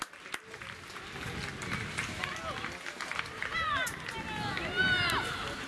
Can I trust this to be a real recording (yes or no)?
yes